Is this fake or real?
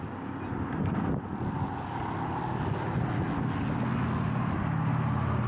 real